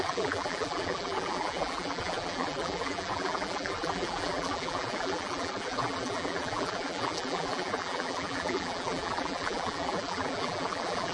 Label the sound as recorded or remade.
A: remade